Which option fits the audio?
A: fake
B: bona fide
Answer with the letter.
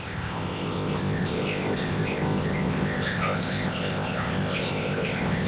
A